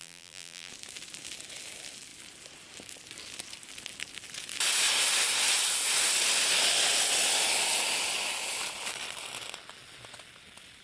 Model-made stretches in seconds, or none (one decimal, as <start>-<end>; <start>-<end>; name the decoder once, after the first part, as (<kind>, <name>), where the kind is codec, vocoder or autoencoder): 0.0-0.7 (vocoder, BigVGAN v2)